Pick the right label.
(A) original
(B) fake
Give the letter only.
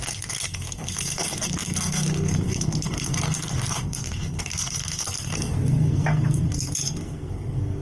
B